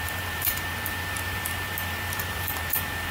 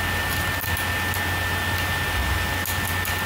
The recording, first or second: second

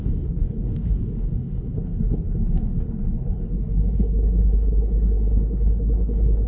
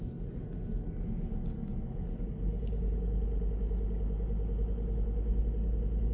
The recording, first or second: second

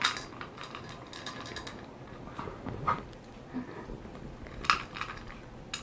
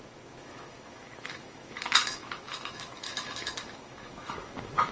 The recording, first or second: first